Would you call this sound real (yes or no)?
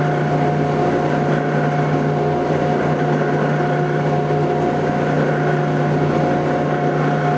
yes